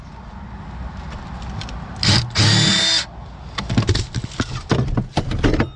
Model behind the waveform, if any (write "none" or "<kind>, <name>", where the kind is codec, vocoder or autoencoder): none